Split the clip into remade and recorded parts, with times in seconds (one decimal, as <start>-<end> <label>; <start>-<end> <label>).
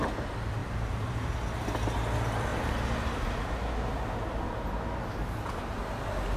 0.0-0.6 recorded; 0.6-1.3 remade; 1.3-2.5 recorded; 2.5-3.4 remade; 3.4-6.4 recorded